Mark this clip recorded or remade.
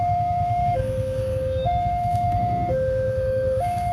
remade